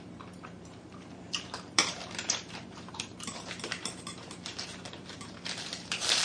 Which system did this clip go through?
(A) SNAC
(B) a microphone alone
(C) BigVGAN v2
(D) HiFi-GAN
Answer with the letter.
C